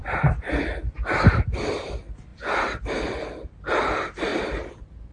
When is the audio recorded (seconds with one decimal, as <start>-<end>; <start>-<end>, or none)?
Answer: 2.3-3.0; 4.3-5.1